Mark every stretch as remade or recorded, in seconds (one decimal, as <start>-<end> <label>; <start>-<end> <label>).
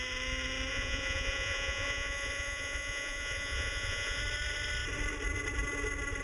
0.0-0.7 recorded; 0.7-4.2 remade; 4.2-6.2 recorded